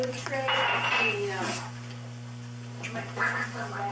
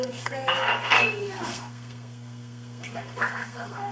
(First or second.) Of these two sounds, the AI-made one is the second